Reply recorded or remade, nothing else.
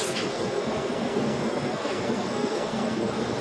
remade